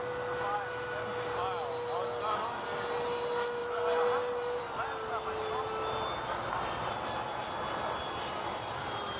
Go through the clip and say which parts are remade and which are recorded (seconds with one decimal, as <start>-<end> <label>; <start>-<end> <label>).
0.0-3.6 recorded; 3.6-4.6 remade; 4.6-9.2 recorded